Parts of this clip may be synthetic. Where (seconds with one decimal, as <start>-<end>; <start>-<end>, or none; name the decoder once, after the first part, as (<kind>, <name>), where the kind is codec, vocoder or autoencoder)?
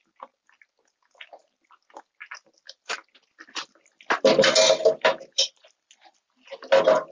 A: none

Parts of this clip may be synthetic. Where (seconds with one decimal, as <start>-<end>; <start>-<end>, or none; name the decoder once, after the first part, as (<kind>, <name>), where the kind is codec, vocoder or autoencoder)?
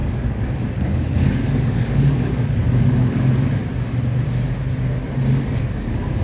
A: 0.0-3.6 (codec, DAC); 5.4-6.2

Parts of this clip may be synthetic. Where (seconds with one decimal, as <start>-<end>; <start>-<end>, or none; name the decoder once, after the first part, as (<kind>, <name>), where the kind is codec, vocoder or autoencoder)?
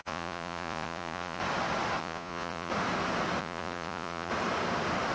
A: 0.0-1.4 (vocoder, Vocos); 2.0-2.7; 3.4-4.3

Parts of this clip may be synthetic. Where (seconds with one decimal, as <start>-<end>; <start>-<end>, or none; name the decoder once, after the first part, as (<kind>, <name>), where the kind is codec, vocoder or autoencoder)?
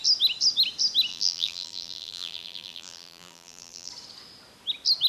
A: 1.1-3.9 (vocoder, BigVGAN v2)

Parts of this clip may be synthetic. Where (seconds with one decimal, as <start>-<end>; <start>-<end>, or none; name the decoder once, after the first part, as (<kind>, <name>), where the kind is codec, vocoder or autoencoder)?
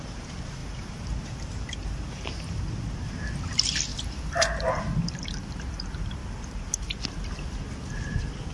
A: 0.6-2.6 (vocoder, BigVGAN v2); 3.9-4.8